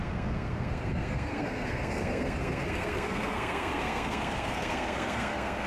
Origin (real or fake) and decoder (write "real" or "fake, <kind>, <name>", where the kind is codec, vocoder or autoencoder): fake, codec, SNAC